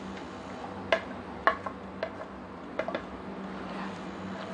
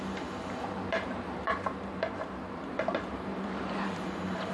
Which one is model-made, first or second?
second